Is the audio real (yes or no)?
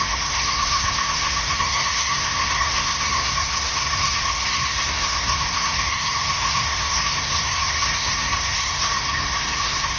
no